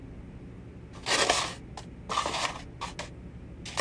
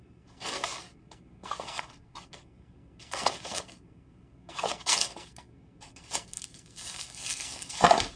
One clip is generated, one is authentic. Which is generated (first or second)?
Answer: second